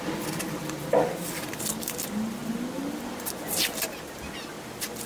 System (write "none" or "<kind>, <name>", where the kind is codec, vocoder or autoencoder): none